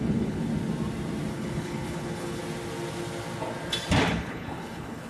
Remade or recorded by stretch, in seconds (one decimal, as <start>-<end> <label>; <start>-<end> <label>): 0.0-0.5 remade; 0.5-1.3 recorded; 1.3-2.4 remade; 2.4-4.1 recorded; 4.1-5.1 remade

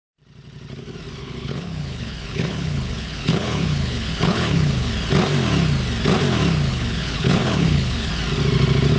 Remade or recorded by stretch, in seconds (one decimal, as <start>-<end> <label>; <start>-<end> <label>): 0.0-1.2 recorded; 1.2-4.9 remade; 4.9-6.7 recorded; 6.7-8.1 remade; 8.1-9.0 recorded

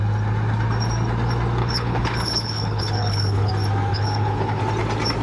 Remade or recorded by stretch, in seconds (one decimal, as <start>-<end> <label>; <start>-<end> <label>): 0.0-1.6 recorded; 1.6-3.5 remade; 3.5-3.9 recorded; 3.9-4.6 remade; 4.6-5.2 recorded

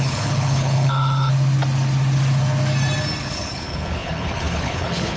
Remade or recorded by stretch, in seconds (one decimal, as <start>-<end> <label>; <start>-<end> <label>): 0.0-1.3 remade; 1.3-3.2 recorded; 3.2-5.2 remade

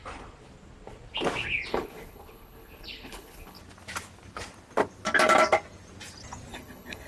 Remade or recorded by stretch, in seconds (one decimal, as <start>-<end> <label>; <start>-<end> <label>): 0.0-1.7 recorded; 1.7-3.6 remade; 3.6-6.5 recorded; 6.5-7.1 remade

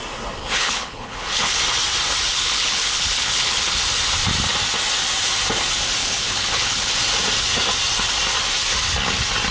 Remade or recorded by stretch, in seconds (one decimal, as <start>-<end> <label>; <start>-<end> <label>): 0.0-0.4 recorded; 0.4-1.6 remade; 1.6-2.3 recorded; 2.3-3.8 remade; 3.8-6.0 recorded; 6.0-6.9 remade; 6.9-9.5 recorded